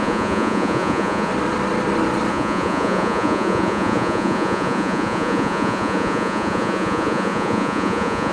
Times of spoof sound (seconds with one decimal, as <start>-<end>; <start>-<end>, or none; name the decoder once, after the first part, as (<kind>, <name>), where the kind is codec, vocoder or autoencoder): 0.0-1.3 (vocoder, Vocos); 2.3-8.3